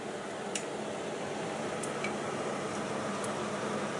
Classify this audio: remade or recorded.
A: recorded